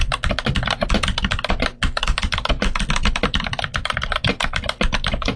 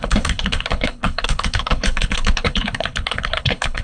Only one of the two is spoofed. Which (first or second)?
second